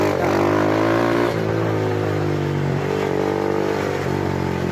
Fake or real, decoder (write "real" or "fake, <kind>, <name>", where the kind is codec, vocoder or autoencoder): real